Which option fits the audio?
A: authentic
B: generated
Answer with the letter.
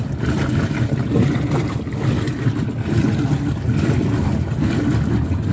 A